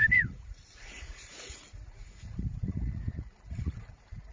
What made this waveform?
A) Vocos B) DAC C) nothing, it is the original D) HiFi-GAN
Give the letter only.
A